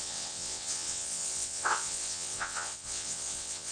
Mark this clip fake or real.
fake